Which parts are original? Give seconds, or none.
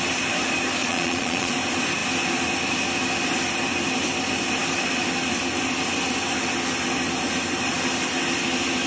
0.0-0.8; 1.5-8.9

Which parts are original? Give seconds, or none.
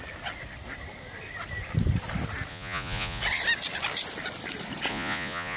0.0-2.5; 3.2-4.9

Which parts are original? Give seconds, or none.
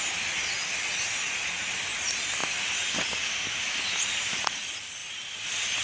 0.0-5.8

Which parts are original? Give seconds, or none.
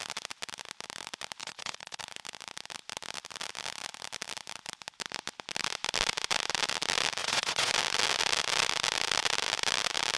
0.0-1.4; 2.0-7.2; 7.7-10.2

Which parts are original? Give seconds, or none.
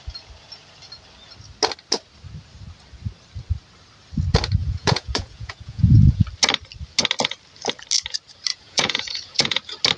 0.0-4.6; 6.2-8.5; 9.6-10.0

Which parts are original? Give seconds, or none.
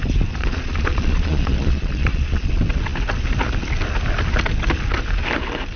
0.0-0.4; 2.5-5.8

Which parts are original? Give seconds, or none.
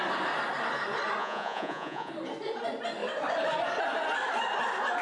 0.0-1.2; 2.1-5.0